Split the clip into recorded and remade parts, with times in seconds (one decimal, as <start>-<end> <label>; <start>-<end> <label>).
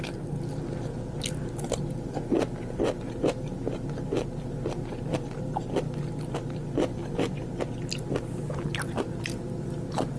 0.0-10.2 recorded